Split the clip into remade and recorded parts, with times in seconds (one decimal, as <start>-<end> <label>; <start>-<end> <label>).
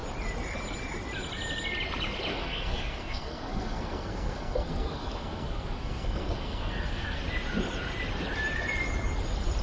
0.0-2.3 recorded; 2.3-7.2 remade; 7.2-9.6 recorded